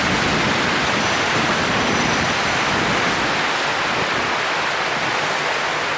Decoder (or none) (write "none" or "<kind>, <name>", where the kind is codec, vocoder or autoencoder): none